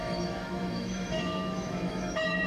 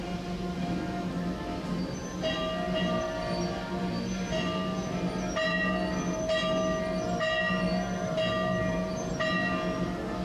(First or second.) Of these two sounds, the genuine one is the second